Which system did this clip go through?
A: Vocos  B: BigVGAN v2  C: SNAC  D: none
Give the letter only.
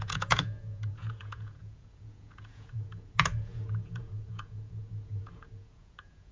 A